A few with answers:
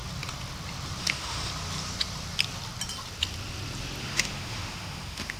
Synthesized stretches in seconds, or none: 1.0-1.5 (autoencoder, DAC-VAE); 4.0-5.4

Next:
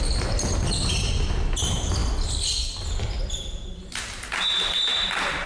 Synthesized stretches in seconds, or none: none

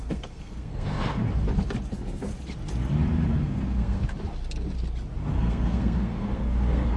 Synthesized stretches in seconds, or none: 0.0-1.2 (codec, SNAC); 1.9-2.3; 3.3-4.0; 5.3-7.0